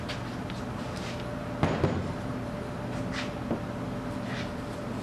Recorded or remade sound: recorded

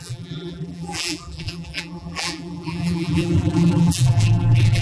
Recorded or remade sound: remade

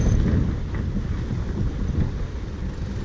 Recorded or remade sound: recorded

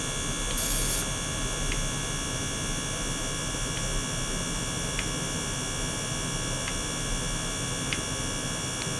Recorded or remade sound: recorded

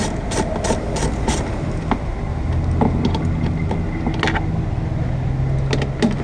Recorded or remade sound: recorded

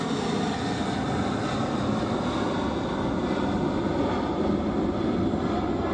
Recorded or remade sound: recorded